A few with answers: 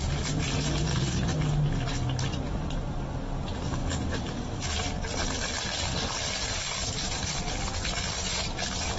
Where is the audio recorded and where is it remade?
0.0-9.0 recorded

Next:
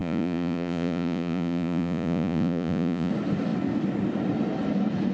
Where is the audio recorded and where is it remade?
0.0-3.1 remade; 3.1-5.1 recorded

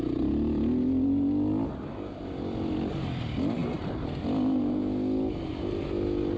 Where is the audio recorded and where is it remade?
0.0-6.4 recorded

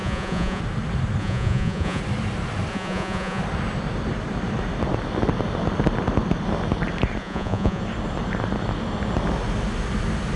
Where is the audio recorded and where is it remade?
0.0-0.6 remade; 0.6-1.2 recorded; 1.2-2.0 remade; 2.0-2.7 recorded; 2.7-3.4 remade; 3.4-7.2 recorded; 7.2-7.8 remade; 7.8-10.4 recorded

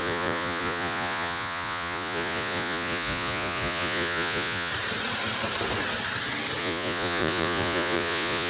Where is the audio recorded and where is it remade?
0.0-4.7 remade; 4.7-6.6 recorded; 6.6-8.5 remade

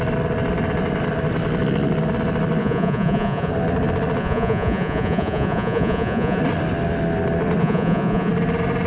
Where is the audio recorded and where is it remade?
0.0-2.6 recorded; 2.6-3.5 remade; 3.5-4.2 recorded; 4.2-6.4 remade; 6.4-7.6 recorded; 7.6-8.3 remade; 8.3-8.9 recorded

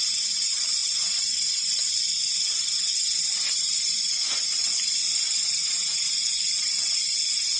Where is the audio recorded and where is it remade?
0.0-5.6 recorded; 5.6-6.5 remade; 6.5-7.6 recorded

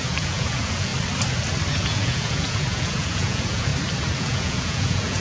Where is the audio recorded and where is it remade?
0.0-0.9 remade; 0.9-1.7 recorded; 1.7-3.7 remade; 3.7-4.2 recorded; 4.2-5.2 remade